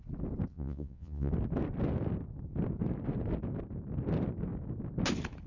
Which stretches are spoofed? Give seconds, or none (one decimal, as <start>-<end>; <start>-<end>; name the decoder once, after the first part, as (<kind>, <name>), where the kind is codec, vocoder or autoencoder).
0.5-1.3 (vocoder, Vocos)